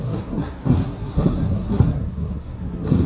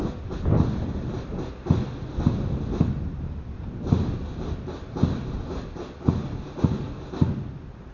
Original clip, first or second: second